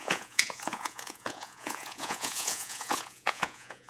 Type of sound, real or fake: fake